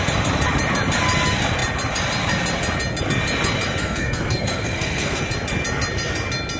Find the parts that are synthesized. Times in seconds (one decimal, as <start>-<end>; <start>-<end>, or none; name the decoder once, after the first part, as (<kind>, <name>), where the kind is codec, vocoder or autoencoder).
3.8-5.2 (codec, SNAC)